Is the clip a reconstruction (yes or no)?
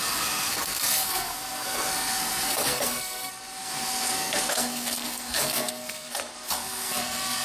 yes